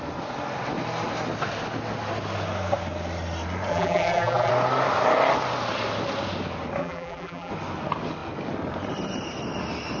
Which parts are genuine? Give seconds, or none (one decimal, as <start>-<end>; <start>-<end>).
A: 0.0-3.7; 4.5-6.8; 7.5-10.0